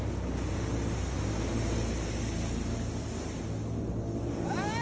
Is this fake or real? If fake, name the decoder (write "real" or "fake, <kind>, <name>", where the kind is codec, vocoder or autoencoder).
real